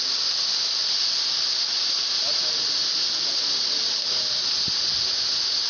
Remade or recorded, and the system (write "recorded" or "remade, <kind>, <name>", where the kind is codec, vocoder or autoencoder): recorded